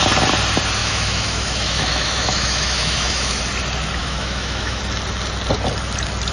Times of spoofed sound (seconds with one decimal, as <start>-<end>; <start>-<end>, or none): 0.8-3.4; 4.0-4.8